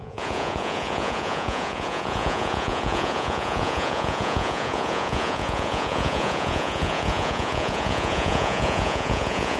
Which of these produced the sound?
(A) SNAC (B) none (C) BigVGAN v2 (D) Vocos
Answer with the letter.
D